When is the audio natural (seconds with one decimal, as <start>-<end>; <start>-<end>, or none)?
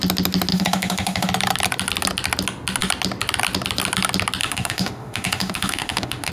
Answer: 0.0-0.5; 1.3-4.4